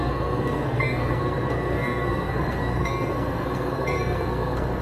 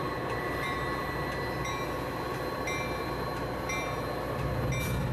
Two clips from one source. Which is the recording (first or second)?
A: second